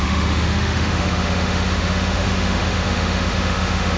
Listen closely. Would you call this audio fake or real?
fake